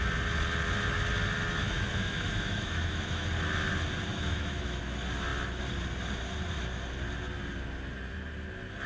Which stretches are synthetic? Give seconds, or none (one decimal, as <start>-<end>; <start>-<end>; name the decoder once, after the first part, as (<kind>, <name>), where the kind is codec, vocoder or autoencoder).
1.6-3.3 (autoencoder, DAC-VAE); 4.1-4.8